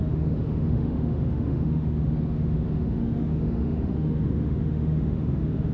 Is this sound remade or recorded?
remade